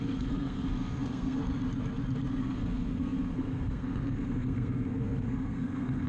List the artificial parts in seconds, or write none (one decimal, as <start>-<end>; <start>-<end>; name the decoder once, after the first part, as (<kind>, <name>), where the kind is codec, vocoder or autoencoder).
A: 0.0-1.4 (codec, SNAC); 2.4-6.1